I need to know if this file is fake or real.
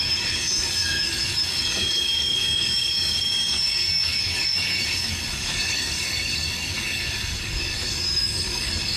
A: fake